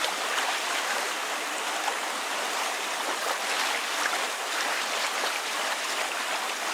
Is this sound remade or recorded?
remade